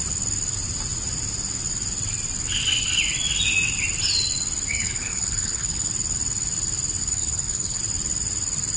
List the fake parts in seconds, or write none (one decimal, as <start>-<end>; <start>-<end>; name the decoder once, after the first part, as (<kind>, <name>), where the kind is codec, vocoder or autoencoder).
4.7-5.9 (codec, HILCodec); 7.0-7.8

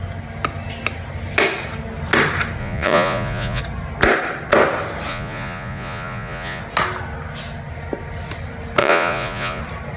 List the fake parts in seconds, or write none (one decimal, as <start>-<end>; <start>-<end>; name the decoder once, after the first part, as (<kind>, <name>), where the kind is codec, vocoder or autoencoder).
2.6-3.6 (vocoder, Vocos); 5.1-6.6; 8.8-9.6

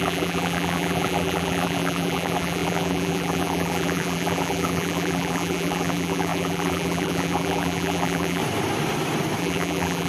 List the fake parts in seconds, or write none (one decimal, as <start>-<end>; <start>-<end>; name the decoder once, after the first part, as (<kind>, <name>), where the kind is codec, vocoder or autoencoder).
0.0-8.4 (vocoder, BigVGAN v2); 9.4-10.1

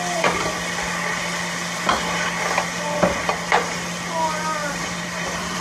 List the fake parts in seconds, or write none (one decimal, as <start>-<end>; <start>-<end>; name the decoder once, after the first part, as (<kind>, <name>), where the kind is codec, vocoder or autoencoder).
4.6-5.6 (vocoder, BigVGAN v2)

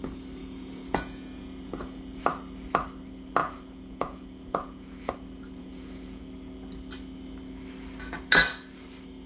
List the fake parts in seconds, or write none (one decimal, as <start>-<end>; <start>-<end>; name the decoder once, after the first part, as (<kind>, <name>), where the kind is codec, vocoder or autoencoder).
0.4-2.0 (vocoder, Vocos); 3.4-5.1; 5.6-6.2

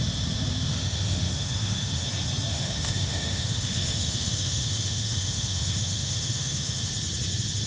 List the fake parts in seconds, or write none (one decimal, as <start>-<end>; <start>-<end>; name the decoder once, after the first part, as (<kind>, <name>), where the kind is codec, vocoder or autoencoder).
0.7-2.1 (autoencoder, DAC-VAE); 2.5-6.9

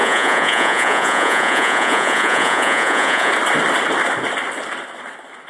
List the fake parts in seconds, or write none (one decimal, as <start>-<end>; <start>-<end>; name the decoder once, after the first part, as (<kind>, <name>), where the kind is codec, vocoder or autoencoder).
0.0-3.3 (vocoder, Vocos)